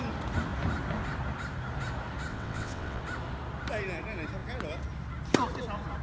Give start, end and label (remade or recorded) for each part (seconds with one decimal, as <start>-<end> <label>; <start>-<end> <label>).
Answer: 0.0-2.3 recorded; 2.3-3.0 remade; 3.0-6.0 recorded